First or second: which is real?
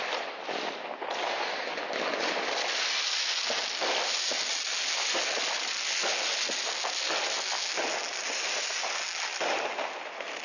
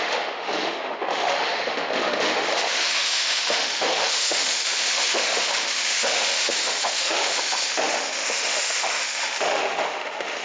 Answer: first